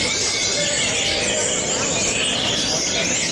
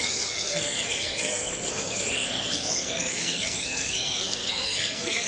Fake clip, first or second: second